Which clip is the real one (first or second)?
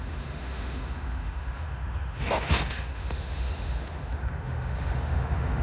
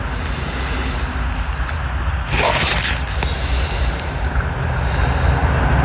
second